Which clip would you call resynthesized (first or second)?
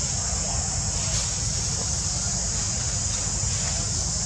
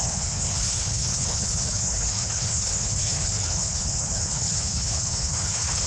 second